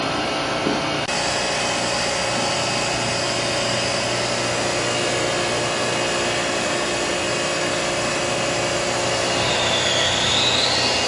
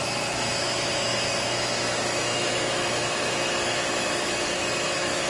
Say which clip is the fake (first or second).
second